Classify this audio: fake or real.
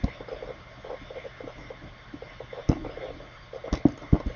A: real